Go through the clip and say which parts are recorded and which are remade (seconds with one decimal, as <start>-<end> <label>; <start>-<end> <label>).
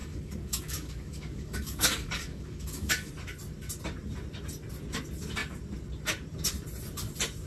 0.0-3.1 remade; 3.1-7.5 recorded